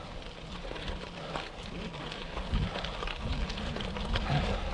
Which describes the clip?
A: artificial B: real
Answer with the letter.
B